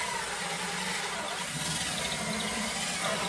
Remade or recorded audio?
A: recorded